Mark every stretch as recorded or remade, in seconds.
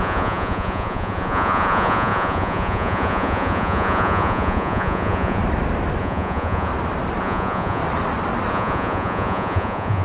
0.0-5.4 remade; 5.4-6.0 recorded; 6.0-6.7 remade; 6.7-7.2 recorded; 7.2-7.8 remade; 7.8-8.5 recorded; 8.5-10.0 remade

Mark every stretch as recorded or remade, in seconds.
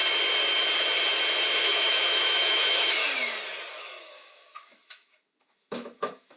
0.0-1.6 recorded; 1.6-3.0 remade; 3.0-3.8 recorded; 3.8-6.4 remade